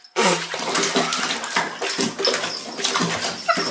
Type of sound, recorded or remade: recorded